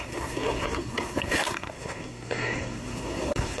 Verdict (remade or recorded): remade